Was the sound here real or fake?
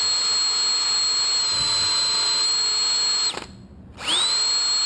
real